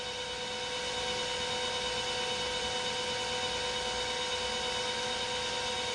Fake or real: real